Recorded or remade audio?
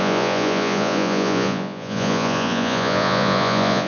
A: remade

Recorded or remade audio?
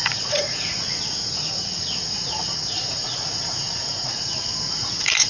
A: remade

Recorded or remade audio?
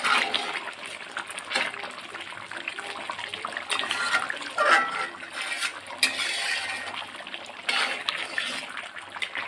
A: recorded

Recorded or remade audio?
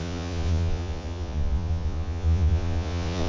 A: remade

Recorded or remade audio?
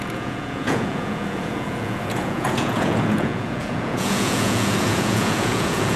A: remade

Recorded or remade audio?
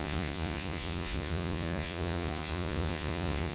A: remade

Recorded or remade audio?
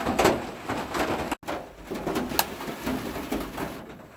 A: recorded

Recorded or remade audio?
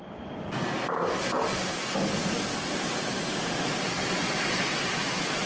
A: recorded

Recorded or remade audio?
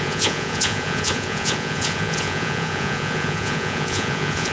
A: remade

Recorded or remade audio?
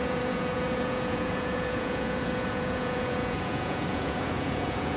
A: remade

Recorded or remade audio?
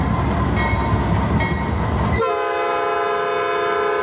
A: recorded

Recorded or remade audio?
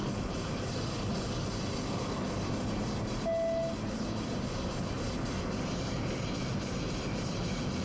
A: recorded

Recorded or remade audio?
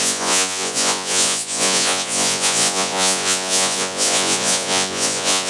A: remade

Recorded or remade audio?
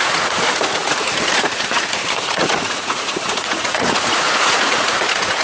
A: remade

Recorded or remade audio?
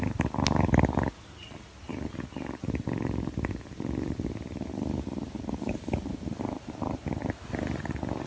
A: recorded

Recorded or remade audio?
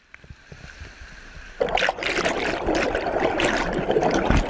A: recorded